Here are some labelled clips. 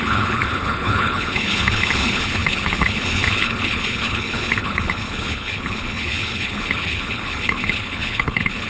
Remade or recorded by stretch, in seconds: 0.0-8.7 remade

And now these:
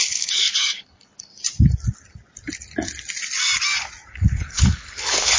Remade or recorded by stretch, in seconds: 0.0-1.3 remade; 1.3-4.1 recorded; 4.1-5.4 remade

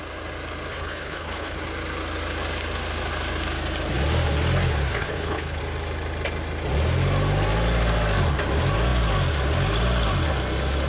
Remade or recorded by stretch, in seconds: 0.0-0.7 recorded; 0.7-1.6 remade; 1.6-4.9 recorded; 4.9-5.6 remade; 5.6-10.9 recorded

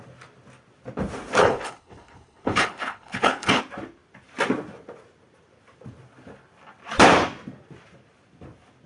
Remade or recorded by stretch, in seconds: 0.0-1.4 recorded; 1.4-3.6 remade; 3.6-8.9 recorded

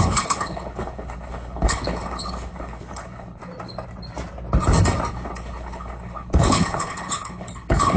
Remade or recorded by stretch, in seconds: 0.0-3.4 remade; 3.4-5.1 recorded; 5.1-8.0 remade

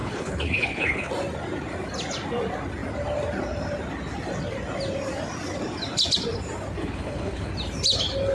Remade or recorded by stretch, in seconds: 0.0-1.1 remade; 1.1-6.8 recorded; 6.8-7.5 remade; 7.5-8.3 recorded

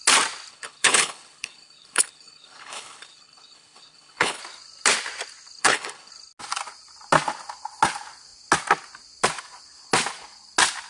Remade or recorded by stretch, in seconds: 0.0-0.5 recorded; 0.5-4.4 remade; 4.4-5.6 recorded; 5.6-6.1 remade; 6.1-10.9 recorded

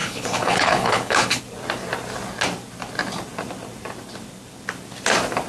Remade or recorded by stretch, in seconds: 0.0-1.4 remade; 1.4-5.5 recorded